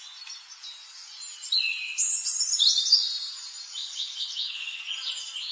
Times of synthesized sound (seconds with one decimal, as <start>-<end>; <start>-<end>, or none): 3.8-4.8